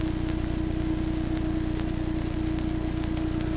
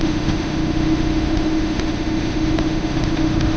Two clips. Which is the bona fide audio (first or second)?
first